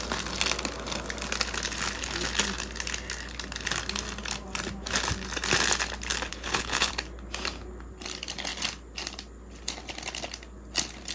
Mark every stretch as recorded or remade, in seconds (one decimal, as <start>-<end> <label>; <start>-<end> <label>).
0.0-6.3 recorded; 6.3-6.9 remade; 6.9-11.1 recorded

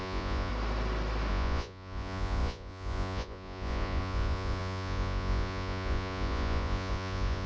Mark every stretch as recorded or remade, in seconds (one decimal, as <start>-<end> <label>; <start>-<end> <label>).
0.0-0.5 remade; 0.5-1.3 recorded; 1.3-7.5 remade

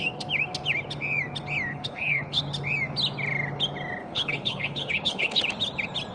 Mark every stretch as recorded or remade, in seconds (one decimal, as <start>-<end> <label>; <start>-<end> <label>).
0.0-1.7 recorded; 1.7-2.4 remade; 2.4-4.0 recorded; 4.0-5.4 remade; 5.4-6.1 recorded

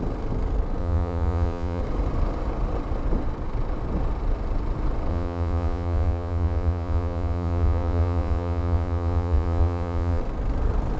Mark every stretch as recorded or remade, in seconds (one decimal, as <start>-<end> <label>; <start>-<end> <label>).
0.0-0.8 recorded; 0.8-1.8 remade; 1.8-5.1 recorded; 5.1-10.2 remade; 10.2-11.0 recorded

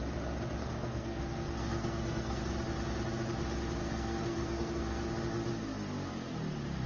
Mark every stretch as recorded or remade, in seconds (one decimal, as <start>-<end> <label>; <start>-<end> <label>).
0.0-0.6 recorded; 0.6-2.4 remade; 2.4-3.8 recorded; 3.8-5.0 remade; 5.0-6.9 recorded